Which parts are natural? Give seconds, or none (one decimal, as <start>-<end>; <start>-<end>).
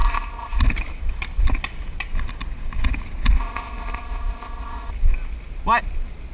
0.6-3.4; 4.9-6.3